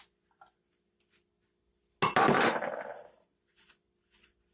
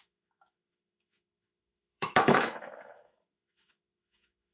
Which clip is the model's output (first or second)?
second